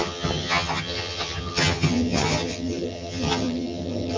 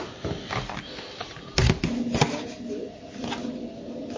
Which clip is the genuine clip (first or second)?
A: second